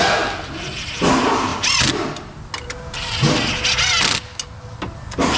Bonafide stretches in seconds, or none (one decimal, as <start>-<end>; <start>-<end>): 0.0-5.4